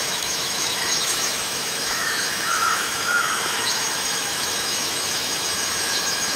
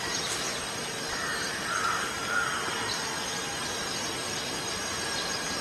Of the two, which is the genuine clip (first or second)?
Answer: second